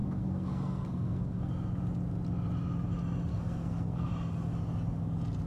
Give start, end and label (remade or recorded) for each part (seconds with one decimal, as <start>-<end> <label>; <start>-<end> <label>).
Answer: 0.0-1.5 remade; 1.5-3.3 recorded; 3.3-4.1 remade; 4.1-5.5 recorded